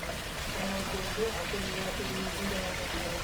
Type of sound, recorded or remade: recorded